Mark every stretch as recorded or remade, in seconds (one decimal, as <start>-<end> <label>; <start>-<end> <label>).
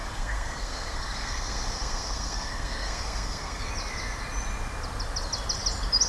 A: 0.0-3.7 remade; 3.7-6.1 recorded